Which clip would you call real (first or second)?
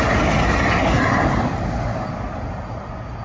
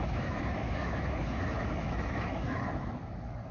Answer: first